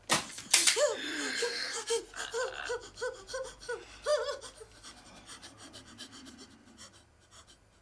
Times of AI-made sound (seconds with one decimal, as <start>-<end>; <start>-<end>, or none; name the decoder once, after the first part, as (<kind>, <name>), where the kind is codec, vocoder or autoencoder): 1.4-2.0 (codec, SNAC)